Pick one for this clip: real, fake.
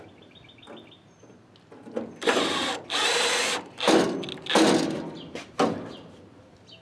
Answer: real